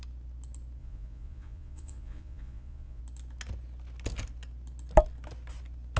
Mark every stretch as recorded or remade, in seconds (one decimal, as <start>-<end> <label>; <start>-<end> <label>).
0.0-0.8 recorded; 0.8-3.0 remade; 3.0-6.0 recorded